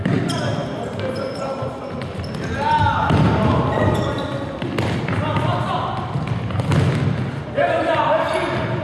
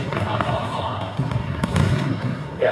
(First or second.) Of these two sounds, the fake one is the second